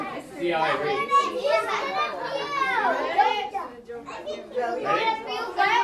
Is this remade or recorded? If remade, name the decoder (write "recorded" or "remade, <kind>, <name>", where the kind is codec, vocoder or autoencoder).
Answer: recorded